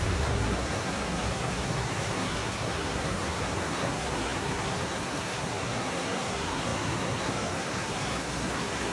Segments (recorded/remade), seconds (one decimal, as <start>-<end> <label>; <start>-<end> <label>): 0.0-8.9 remade